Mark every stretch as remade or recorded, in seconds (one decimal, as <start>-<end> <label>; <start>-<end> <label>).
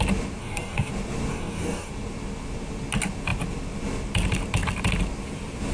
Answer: 0.0-0.4 recorded; 0.4-0.9 remade; 0.9-1.3 recorded; 1.3-1.9 remade; 1.9-5.7 recorded